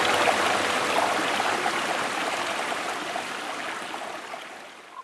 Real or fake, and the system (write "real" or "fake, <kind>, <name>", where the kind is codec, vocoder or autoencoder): real